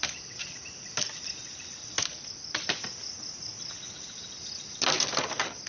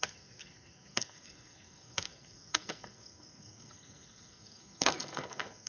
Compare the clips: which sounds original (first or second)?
first